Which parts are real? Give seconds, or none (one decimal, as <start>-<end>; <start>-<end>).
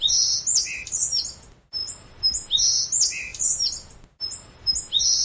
0.0-5.2